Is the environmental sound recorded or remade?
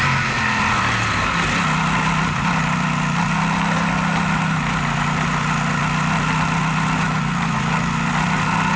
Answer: recorded